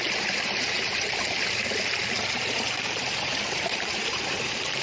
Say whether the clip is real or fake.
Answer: fake